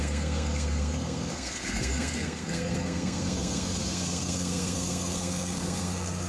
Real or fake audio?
fake